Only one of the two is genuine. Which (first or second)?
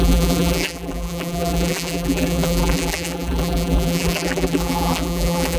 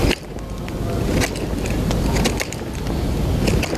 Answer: second